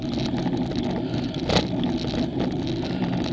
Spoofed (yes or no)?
no